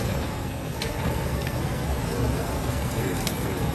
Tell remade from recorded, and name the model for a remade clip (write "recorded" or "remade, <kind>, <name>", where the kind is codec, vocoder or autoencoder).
remade, codec, SNAC